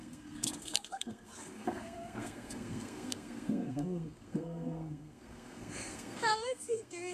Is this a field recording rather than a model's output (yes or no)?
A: no